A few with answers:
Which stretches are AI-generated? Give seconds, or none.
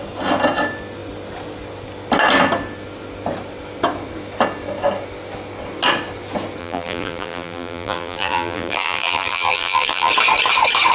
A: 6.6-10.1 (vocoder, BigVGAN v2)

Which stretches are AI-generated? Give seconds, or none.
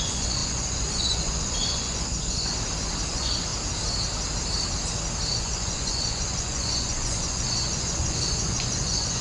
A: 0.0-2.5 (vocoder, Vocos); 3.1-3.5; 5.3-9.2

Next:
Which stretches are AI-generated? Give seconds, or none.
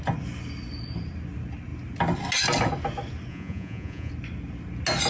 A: 3.3-4.1 (vocoder, Vocos)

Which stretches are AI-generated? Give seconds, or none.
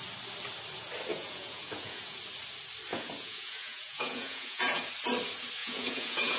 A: 1.1-2.2 (vocoder, Vocos); 2.9-4.9; 5.6-6.4